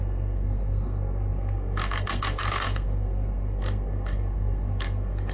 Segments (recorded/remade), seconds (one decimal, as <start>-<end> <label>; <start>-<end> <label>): 0.0-5.3 remade